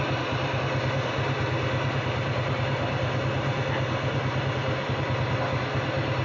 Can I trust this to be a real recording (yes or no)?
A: yes